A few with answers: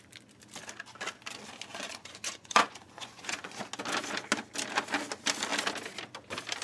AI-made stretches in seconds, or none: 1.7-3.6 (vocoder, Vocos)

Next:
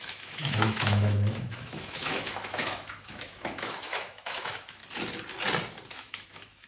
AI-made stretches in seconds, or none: 0.0-4.8 (autoencoder, DAC-VAE); 5.9-6.7

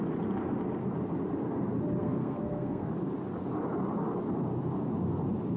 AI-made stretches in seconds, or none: 2.0-2.9 (codec, SNAC)

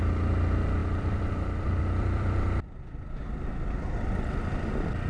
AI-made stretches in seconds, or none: 0.8-3.2 (vocoder, BigVGAN v2)

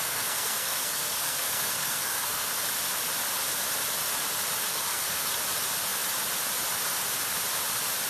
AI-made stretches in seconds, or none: 0.0-2.5 (codec, SNAC); 4.7-5.3

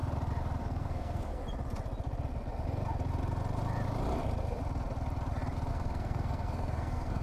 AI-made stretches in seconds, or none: 0.6-1.4 (codec, SNAC); 5.7-7.2

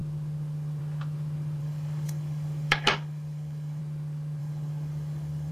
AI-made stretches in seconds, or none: 1.6-3.8 (codec, DAC); 4.4-5.5

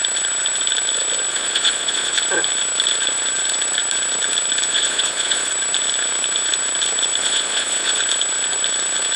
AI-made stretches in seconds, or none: 1.3-2.2 (vocoder, Vocos); 4.7-5.5; 7.2-8.0